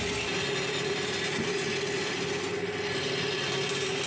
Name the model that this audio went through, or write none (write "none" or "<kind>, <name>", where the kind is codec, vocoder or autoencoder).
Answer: none